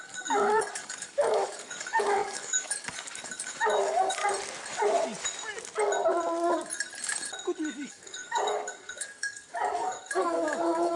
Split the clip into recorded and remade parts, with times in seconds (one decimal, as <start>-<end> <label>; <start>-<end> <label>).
0.0-4.2 remade; 4.2-7.9 recorded; 7.9-11.0 remade